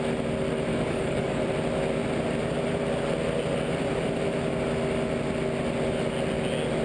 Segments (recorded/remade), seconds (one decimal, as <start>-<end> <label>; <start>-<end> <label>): 0.0-0.7 recorded; 0.7-1.4 remade; 1.4-6.8 recorded